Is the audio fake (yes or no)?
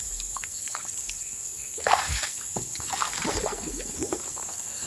yes